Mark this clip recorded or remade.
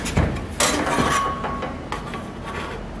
recorded